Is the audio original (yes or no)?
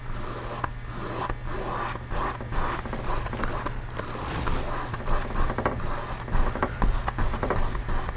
yes